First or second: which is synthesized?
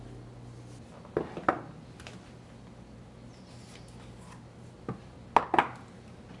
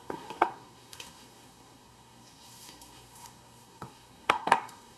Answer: second